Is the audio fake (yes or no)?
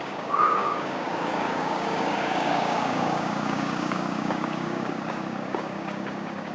yes